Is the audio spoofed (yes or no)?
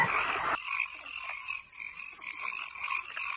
no